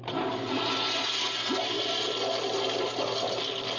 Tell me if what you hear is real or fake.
real